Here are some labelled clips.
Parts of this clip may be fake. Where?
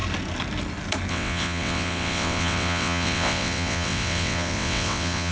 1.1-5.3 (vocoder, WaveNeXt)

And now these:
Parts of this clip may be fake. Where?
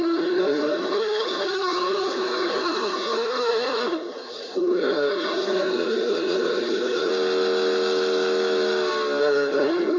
0.0-7.1 (codec, SNAC); 9.2-10.0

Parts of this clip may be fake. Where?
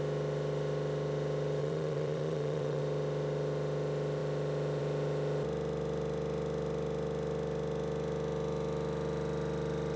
1.6-2.8 (vocoder, WaveNeXt)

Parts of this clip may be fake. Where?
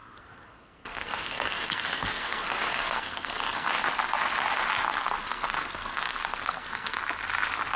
0.0-3.7 (codec, SNAC); 4.9-7.0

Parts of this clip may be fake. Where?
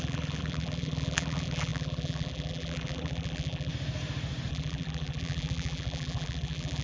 0.0-3.7 (vocoder, BigVGAN v2); 4.5-6.8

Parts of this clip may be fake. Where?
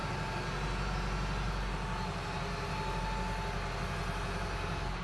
none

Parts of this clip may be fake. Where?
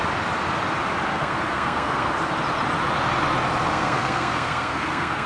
1.1-2.1 (codec, SNAC); 3.7-5.3